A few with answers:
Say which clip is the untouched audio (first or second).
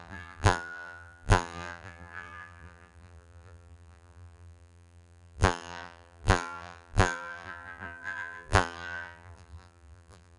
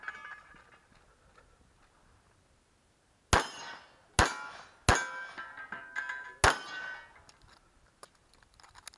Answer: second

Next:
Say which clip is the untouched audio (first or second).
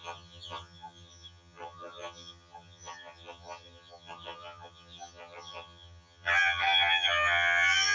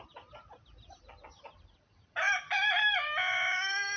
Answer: second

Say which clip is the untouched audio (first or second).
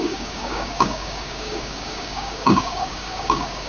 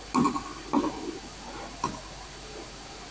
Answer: second